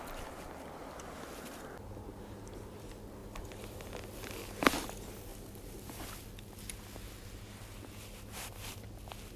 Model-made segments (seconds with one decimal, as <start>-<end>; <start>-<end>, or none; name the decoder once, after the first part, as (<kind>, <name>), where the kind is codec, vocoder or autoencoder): 3.2-3.9 (vocoder, BigVGAN v2); 5.3-6.1